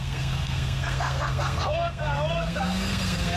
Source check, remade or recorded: remade